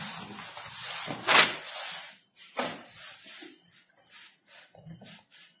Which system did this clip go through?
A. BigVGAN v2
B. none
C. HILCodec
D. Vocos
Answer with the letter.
B